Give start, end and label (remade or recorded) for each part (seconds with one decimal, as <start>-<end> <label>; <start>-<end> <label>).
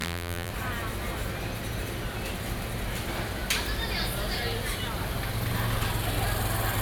0.0-0.5 remade; 0.5-6.8 recorded